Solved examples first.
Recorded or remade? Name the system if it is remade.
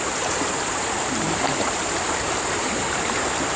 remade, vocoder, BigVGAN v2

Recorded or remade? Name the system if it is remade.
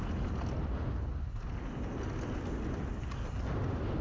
recorded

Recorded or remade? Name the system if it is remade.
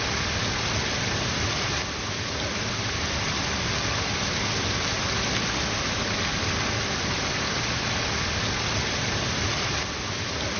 recorded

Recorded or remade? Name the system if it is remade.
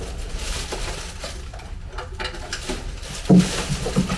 recorded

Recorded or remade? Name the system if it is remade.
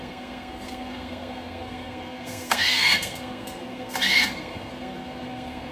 remade, codec, SNAC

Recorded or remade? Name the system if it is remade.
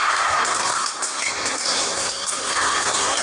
remade, codec, SNAC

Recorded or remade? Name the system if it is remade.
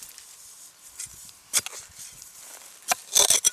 recorded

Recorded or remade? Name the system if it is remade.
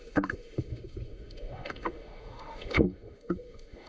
remade, autoencoder, DAC-VAE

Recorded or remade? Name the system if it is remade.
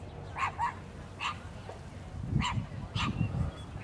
recorded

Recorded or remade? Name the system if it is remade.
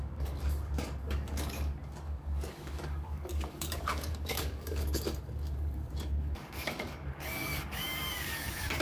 remade, codec, DAC